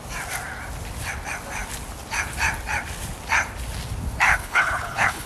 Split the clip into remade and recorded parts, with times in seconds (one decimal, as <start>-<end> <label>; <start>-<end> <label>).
0.0-4.3 recorded; 4.3-5.3 remade

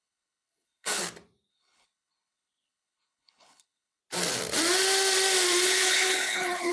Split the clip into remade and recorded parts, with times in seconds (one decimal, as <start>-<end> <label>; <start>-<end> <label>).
0.0-1.0 remade; 1.0-1.5 recorded; 1.5-4.0 remade; 4.0-5.6 recorded; 5.6-6.7 remade

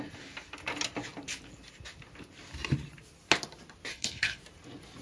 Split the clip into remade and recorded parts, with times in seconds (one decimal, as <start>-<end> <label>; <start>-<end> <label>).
0.0-3.9 recorded; 3.9-4.4 remade; 4.4-5.0 recorded